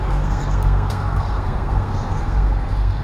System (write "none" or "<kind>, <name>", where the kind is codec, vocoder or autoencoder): codec, SNAC